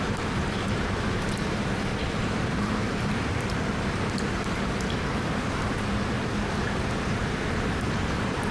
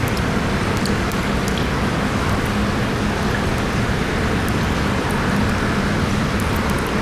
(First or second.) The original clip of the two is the second